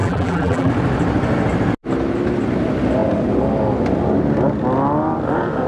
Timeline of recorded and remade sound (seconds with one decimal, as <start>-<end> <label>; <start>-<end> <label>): 0.0-0.7 remade; 0.7-5.7 recorded